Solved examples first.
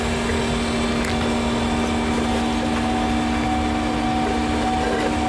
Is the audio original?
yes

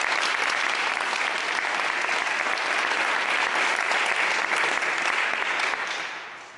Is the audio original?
yes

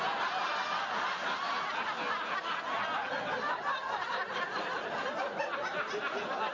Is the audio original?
yes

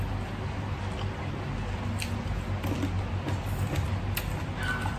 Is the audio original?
yes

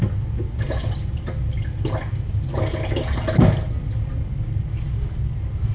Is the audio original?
yes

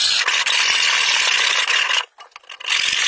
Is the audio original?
yes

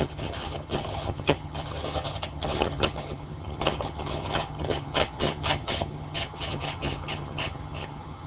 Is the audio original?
no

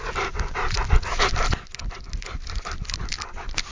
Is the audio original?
yes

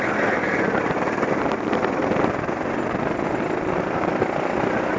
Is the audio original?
yes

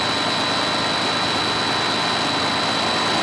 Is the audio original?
yes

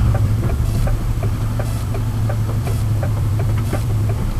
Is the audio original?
no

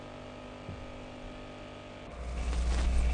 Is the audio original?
yes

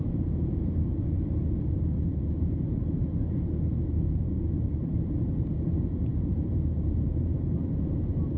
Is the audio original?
no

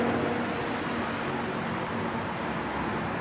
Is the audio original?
yes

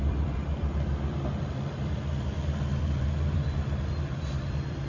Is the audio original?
no